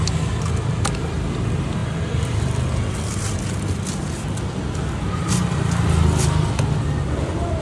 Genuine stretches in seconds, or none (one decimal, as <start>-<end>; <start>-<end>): 0.0-7.6